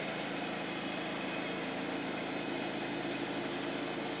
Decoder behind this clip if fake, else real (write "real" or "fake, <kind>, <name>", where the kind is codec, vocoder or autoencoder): real